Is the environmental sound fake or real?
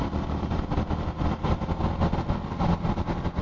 fake